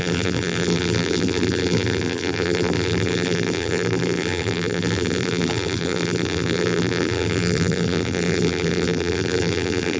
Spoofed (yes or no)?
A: yes